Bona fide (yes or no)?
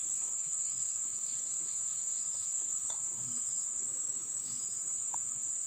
no